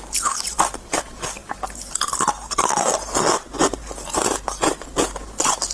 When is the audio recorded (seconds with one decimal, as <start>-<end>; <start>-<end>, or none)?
0.0-5.7